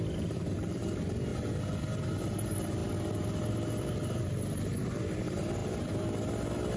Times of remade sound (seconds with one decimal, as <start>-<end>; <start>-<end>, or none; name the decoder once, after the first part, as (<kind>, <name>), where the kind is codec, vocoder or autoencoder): none